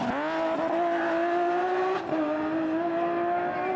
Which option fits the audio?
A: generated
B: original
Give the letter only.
B